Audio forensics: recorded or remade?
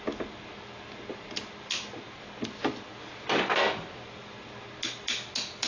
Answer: recorded